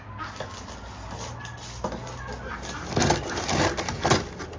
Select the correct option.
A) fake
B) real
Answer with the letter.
B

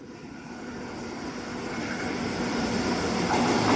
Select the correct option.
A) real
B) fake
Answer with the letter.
A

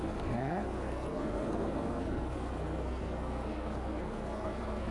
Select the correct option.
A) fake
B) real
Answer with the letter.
A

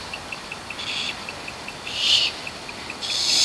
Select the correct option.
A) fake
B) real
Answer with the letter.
B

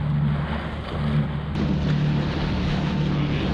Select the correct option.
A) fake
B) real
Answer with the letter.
B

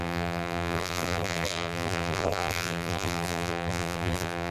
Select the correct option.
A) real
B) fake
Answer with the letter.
B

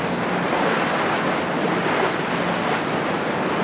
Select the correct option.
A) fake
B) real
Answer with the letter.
B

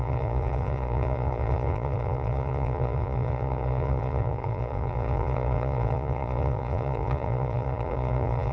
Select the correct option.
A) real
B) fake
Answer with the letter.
B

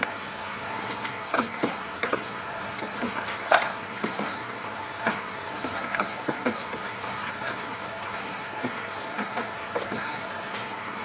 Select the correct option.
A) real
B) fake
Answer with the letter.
B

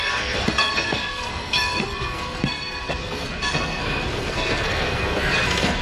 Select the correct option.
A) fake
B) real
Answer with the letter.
A